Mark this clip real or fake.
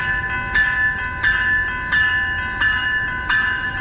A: real